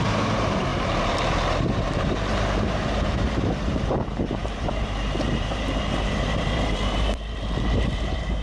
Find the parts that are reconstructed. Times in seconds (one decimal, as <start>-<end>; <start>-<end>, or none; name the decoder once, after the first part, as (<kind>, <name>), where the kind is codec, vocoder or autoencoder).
0.0-8.4 (vocoder, BigVGAN v2)